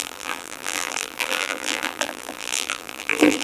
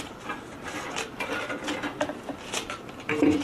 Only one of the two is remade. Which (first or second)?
first